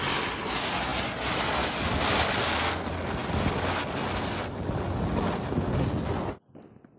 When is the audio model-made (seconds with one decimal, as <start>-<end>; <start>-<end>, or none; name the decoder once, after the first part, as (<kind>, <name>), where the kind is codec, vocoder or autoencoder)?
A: none